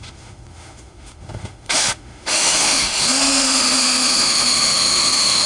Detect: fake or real fake